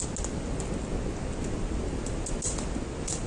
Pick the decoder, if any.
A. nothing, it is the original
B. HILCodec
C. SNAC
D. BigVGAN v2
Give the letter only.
A